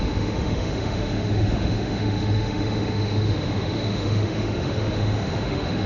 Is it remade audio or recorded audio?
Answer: remade